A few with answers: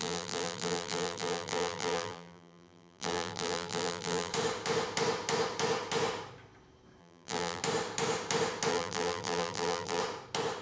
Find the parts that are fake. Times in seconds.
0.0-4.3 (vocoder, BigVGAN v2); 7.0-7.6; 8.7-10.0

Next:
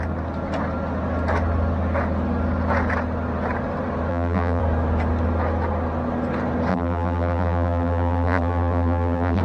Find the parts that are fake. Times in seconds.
4.1-4.6 (vocoder, BigVGAN v2); 6.7-9.4

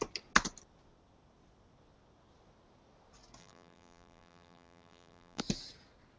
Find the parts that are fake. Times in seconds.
3.4-5.4 (vocoder, BigVGAN v2)

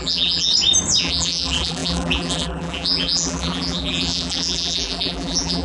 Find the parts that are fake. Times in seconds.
0.0-0.5 (vocoder, BigVGAN v2); 1.0-5.6

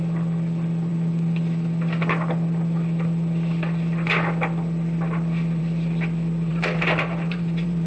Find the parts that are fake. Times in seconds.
6.5-7.9 (vocoder, BigVGAN v2)

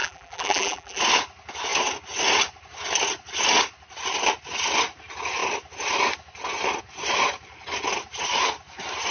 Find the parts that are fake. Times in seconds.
0.0-1.0 (vocoder, BigVGAN v2)

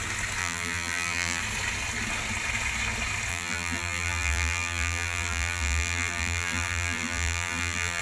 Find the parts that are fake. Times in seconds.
0.4-1.4 (vocoder, BigVGAN v2); 3.3-8.0

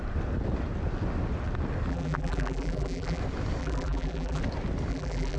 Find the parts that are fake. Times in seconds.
1.9-3.2 (vocoder, BigVGAN v2); 3.6-4.4; 4.9-5.4